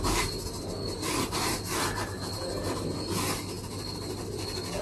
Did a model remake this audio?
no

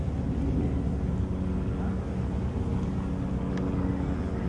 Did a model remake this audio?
no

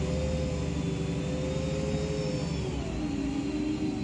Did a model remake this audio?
no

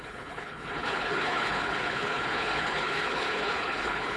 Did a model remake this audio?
yes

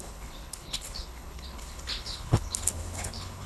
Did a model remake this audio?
yes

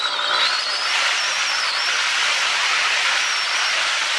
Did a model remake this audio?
no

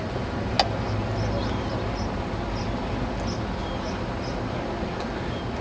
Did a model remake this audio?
no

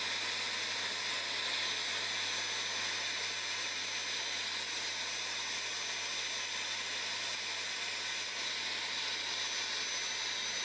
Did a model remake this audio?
no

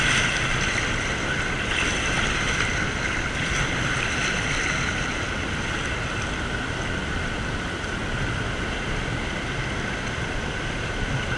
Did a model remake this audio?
no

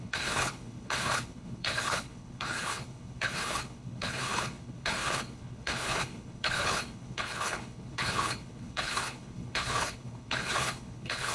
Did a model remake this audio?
yes